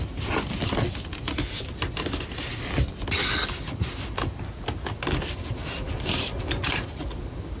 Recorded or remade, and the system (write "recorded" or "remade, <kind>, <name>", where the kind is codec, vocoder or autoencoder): recorded